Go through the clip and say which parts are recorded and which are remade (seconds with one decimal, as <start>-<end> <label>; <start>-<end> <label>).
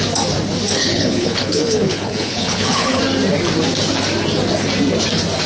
0.0-0.8 recorded; 0.8-3.0 remade; 3.0-5.5 recorded